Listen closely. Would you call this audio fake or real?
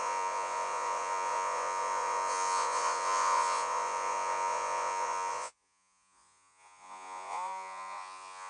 fake